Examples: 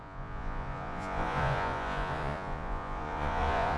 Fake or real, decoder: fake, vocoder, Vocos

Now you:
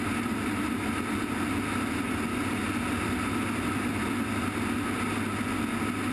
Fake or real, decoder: real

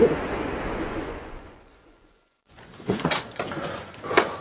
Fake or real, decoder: fake, vocoder, Vocos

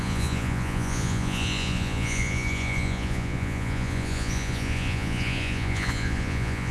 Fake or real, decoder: fake, vocoder, Vocos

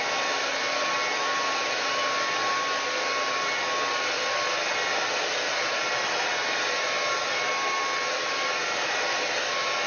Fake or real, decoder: real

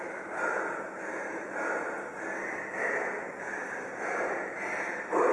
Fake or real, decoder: real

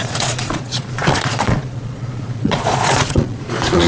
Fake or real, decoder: fake, vocoder, Vocos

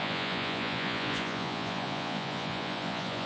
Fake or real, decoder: fake, vocoder, Vocos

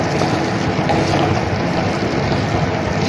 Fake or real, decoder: real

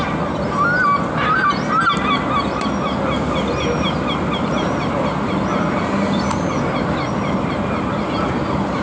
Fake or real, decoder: real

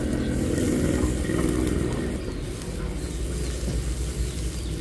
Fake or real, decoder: real